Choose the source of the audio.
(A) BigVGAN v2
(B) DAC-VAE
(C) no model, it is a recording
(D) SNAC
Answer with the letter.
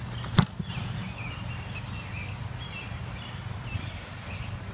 C